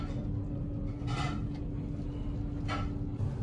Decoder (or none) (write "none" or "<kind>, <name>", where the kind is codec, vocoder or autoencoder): none